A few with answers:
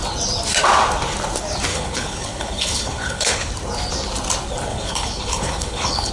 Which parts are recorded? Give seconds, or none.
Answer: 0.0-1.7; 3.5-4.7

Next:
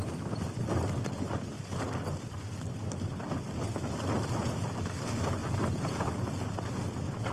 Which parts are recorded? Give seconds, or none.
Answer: 2.9-5.4; 6.1-7.3